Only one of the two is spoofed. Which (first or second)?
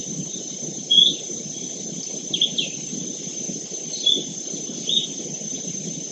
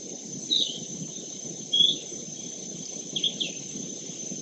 second